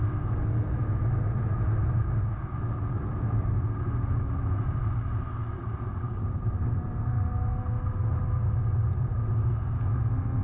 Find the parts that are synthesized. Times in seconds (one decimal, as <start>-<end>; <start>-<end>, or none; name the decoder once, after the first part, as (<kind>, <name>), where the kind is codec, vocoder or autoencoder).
5.6-7.6 (vocoder, BigVGAN v2)